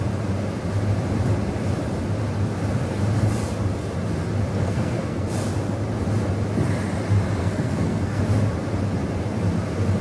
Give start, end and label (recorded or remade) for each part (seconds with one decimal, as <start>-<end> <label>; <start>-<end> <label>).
0.0-4.5 recorded; 4.5-5.3 remade; 5.3-7.4 recorded; 7.4-8.2 remade; 8.2-10.0 recorded